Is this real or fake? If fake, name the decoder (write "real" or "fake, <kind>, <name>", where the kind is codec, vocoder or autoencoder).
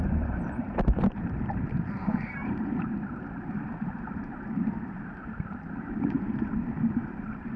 fake, vocoder, BigVGAN v2